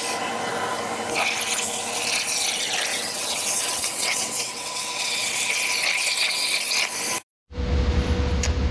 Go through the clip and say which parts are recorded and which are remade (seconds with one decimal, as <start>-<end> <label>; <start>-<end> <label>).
0.0-2.9 recorded; 2.9-5.5 remade; 5.5-8.7 recorded